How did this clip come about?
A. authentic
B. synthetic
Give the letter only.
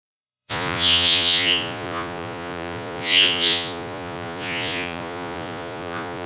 B